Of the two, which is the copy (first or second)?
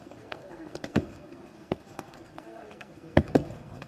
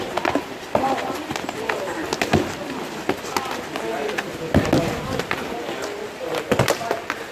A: first